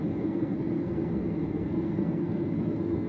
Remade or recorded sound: remade